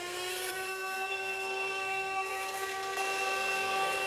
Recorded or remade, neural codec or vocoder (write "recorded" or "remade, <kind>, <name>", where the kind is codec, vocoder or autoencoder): remade, codec, SNAC